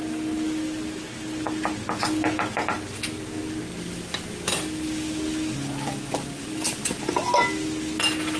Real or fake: real